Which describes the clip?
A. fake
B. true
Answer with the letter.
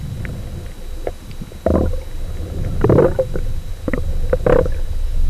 B